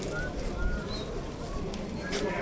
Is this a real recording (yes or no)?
no